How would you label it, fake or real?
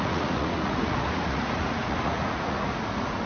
fake